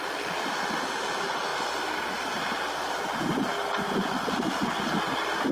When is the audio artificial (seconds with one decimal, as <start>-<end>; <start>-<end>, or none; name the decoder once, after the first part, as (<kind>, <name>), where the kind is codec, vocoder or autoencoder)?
none